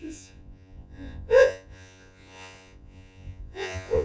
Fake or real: fake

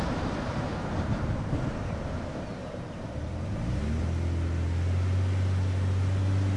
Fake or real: real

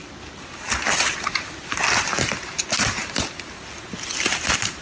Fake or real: real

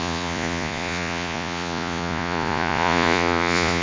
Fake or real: fake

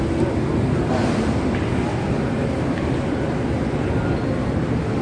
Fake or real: real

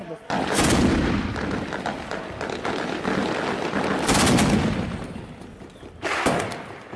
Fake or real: real